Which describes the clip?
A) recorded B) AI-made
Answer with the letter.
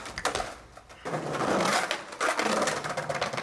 A